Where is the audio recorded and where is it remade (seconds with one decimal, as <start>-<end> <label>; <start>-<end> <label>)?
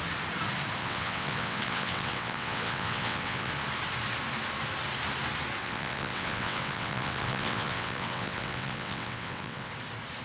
0.0-0.8 recorded; 0.8-3.5 remade; 3.5-5.6 recorded; 5.6-9.7 remade; 9.7-10.2 recorded